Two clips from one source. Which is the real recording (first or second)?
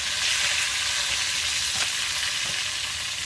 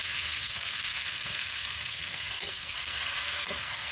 first